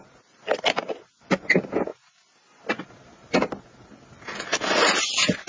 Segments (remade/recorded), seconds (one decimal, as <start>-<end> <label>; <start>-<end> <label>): 0.0-5.5 recorded